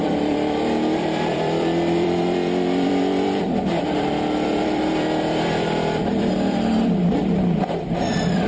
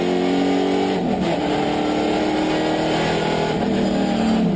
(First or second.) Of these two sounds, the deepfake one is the first